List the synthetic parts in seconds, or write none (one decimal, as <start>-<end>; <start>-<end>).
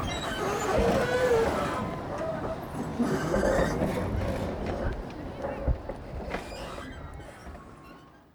1.2-2.0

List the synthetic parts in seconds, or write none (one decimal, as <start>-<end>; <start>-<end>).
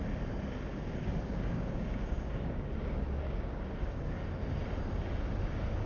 0.7-4.2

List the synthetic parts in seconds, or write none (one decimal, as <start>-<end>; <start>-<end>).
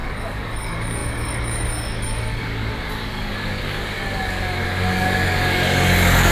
0.0-6.3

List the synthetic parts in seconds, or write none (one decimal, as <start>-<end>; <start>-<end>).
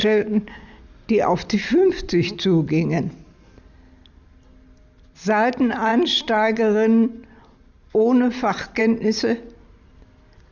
0.0-0.8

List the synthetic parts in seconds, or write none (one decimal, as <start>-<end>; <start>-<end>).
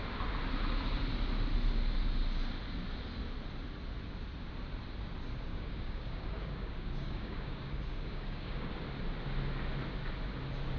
5.5-8.7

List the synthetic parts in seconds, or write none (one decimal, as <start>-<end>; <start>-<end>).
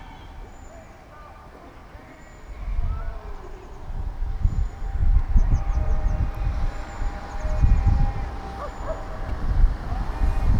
none